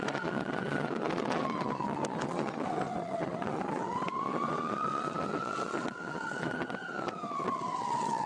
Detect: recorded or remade remade